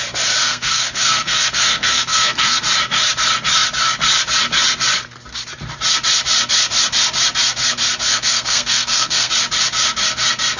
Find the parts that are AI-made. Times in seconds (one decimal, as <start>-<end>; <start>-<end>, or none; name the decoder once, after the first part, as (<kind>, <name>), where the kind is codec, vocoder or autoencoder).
0.4-2.6 (codec, SNAC); 8.1-9.3